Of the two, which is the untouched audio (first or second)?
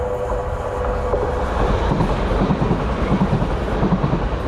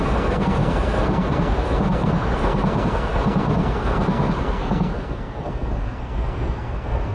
first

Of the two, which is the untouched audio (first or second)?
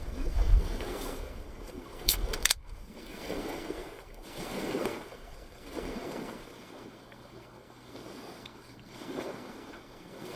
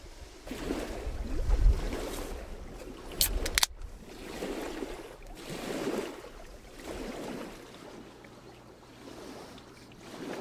second